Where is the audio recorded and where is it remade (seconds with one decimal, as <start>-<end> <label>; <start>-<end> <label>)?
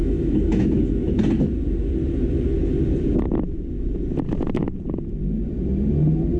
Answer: 0.0-1.2 remade; 1.2-6.4 recorded